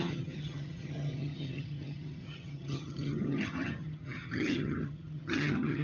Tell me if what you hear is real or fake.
fake